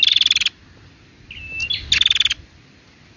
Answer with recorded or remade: recorded